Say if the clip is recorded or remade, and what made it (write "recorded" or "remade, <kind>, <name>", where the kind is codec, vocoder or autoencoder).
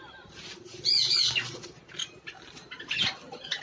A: recorded